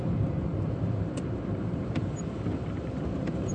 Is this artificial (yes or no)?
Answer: yes